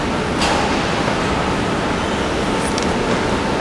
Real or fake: real